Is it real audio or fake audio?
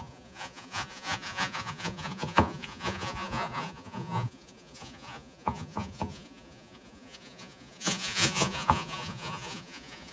fake